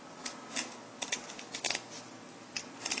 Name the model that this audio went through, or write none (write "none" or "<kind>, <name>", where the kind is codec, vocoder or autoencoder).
none